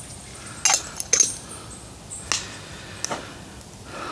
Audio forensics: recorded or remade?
recorded